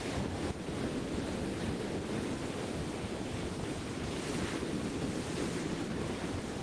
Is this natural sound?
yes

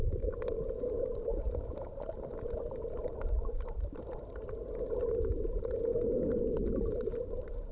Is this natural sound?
yes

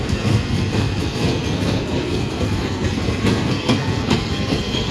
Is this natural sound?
no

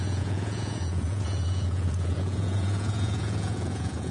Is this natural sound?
no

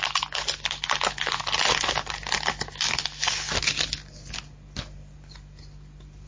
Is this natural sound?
yes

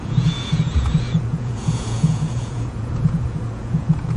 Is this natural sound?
no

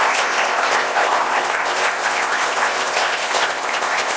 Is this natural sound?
no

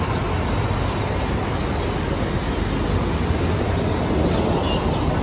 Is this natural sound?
yes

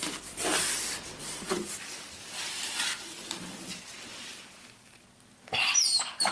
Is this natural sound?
no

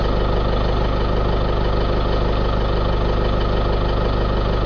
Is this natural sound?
yes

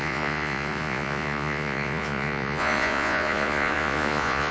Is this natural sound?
no